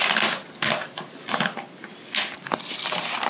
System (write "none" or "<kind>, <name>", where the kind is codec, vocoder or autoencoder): none